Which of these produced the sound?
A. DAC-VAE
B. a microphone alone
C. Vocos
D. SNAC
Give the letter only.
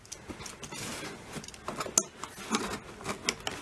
B